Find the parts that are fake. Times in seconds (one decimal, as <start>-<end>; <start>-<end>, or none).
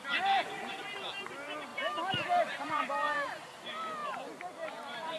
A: 0.0-5.2